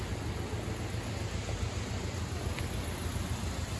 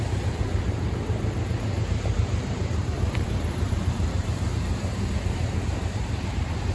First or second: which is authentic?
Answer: first